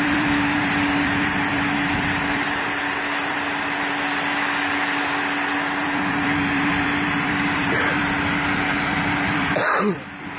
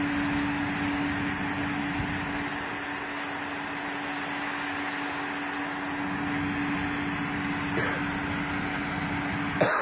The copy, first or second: first